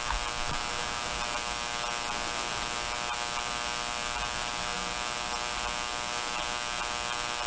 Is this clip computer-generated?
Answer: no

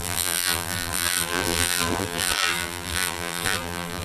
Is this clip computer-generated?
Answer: yes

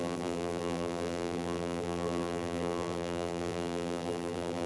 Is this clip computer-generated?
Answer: yes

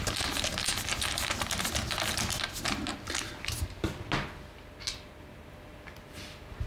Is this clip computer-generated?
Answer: no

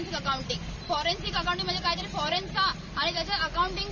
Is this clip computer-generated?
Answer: no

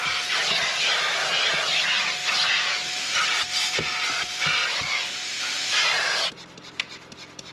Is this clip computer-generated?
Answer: no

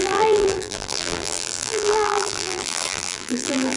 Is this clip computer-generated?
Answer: yes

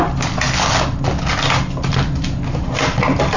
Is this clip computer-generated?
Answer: no